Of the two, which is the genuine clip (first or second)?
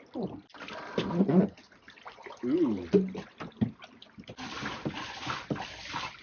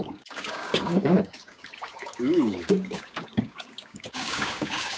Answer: first